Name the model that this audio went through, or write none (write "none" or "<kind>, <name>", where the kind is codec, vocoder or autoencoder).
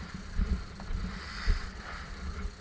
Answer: vocoder, BigVGAN v2